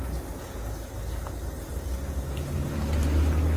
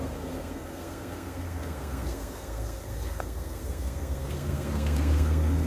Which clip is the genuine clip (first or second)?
first